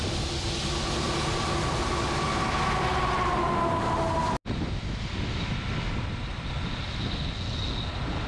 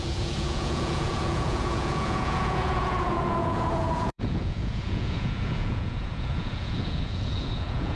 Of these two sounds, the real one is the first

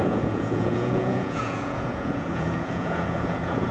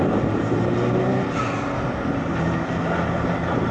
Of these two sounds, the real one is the second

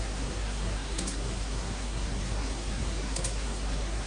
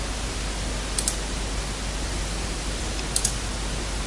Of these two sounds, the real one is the second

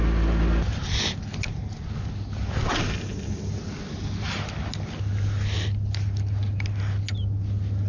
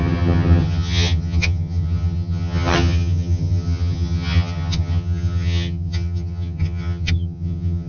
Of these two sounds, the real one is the first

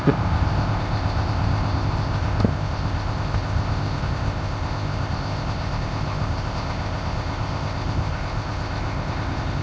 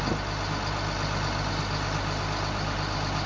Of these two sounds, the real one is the second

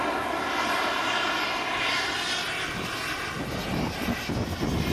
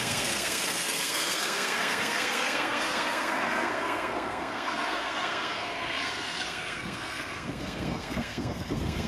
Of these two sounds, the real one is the first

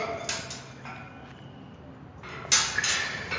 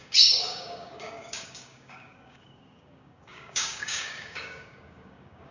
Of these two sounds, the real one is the first